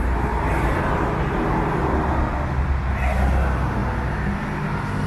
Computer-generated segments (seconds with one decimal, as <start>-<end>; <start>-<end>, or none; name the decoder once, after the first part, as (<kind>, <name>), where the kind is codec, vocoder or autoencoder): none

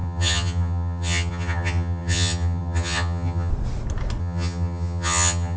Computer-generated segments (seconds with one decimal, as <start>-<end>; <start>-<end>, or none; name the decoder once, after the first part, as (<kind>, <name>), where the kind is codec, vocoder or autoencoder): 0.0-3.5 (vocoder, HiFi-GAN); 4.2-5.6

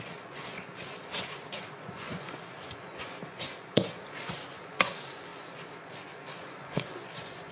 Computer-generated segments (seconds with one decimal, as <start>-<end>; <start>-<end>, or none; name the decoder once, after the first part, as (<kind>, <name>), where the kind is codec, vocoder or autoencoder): 0.0-7.5 (vocoder, Vocos)

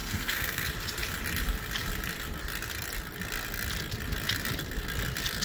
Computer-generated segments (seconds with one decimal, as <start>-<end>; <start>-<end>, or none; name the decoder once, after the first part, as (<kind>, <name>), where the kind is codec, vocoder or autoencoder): 0.0-0.7 (codec, SNAC)